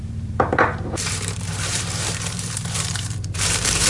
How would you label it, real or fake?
fake